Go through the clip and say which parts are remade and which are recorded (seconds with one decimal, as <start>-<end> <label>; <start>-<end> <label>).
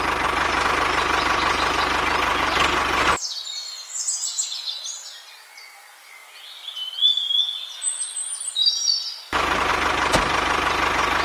0.0-11.2 recorded